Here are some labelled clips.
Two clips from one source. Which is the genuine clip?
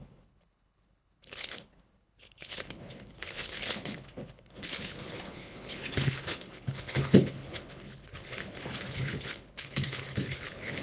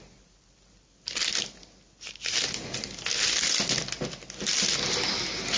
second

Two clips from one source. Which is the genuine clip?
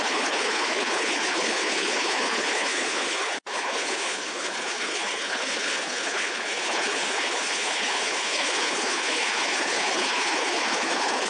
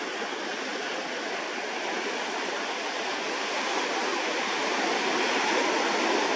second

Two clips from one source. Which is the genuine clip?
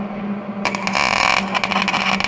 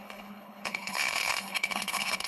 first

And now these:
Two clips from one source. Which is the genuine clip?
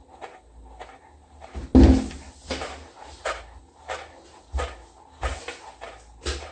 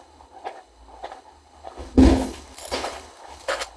first